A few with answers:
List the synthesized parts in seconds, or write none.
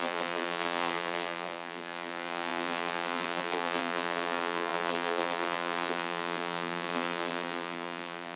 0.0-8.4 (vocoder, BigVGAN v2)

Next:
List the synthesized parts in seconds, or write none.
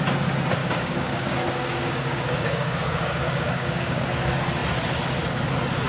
0.6-4.1 (codec, DAC)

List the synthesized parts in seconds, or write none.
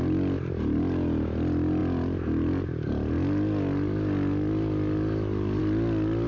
none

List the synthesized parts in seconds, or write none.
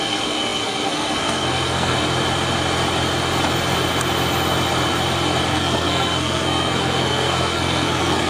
0.0-1.9 (codec, SNAC); 5.5-8.3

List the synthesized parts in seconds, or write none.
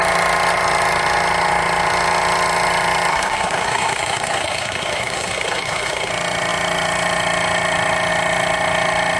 3.1-6.1 (codec, SNAC)